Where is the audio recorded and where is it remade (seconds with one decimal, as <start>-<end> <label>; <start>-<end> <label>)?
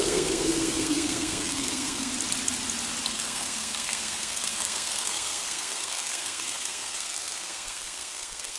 0.0-2.1 remade; 2.1-3.1 recorded; 3.1-8.6 remade